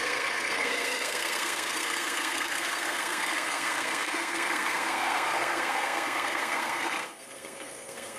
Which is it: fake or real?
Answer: fake